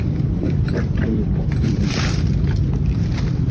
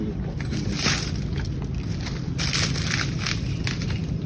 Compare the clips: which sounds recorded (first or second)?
second